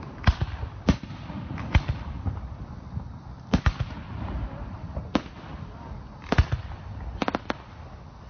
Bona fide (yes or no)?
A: yes